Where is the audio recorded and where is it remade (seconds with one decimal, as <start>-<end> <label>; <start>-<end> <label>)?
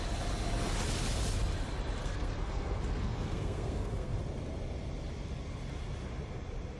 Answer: 0.0-2.0 recorded; 2.0-4.2 remade; 4.2-6.8 recorded